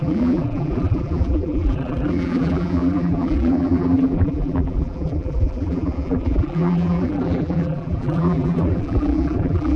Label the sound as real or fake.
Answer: fake